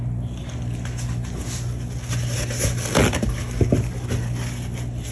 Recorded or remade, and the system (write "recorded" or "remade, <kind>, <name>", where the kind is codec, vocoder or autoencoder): recorded